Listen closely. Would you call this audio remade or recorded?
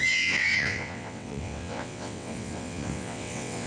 remade